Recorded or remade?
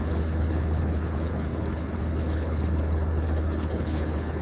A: remade